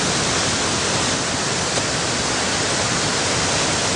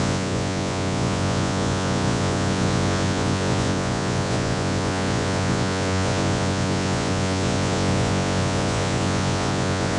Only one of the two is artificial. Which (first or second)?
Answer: second